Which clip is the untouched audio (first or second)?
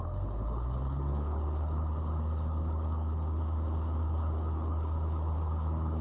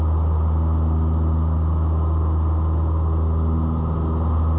second